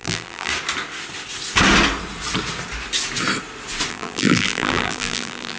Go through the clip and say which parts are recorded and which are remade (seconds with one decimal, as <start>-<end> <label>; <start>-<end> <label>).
0.0-0.5 remade; 0.5-3.9 recorded; 3.9-5.6 remade